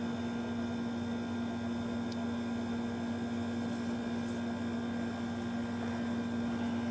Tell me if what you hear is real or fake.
real